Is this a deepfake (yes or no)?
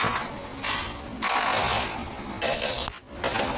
no